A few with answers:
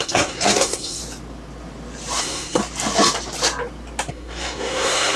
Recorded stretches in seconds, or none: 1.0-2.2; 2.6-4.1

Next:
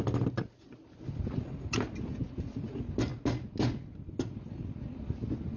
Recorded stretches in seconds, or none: 0.0-5.6

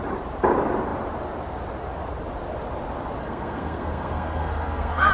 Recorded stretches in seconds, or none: 0.0-3.2

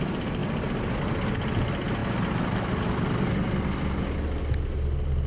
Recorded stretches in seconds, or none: 0.0-5.3